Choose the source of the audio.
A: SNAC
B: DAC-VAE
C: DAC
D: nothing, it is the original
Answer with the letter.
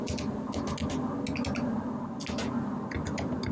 D